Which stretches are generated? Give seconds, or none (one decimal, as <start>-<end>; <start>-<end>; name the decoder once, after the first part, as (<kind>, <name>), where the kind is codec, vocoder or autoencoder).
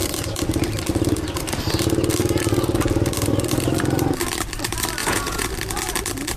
5.0-5.5 (vocoder, Vocos)